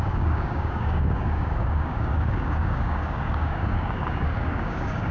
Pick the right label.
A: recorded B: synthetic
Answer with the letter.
B